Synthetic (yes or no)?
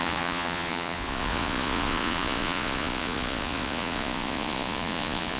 yes